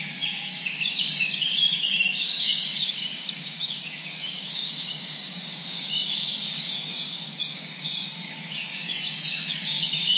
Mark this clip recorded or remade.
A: remade